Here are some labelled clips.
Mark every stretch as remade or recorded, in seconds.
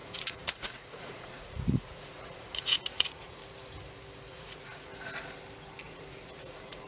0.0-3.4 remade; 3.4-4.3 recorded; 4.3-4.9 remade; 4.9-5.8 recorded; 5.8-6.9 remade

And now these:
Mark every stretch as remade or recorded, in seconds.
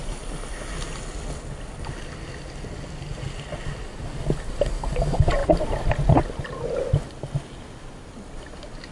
0.0-8.9 recorded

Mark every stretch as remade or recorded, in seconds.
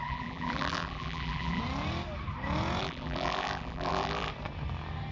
0.0-1.6 remade; 1.6-2.8 recorded; 2.8-4.3 remade; 4.3-5.1 recorded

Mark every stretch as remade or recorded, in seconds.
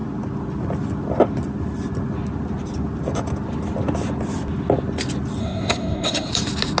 0.0-5.4 recorded; 5.4-6.3 remade; 6.3-6.8 recorded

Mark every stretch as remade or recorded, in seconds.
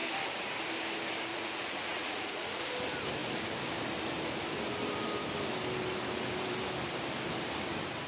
0.0-1.3 recorded; 1.3-2.7 remade; 2.7-8.1 recorded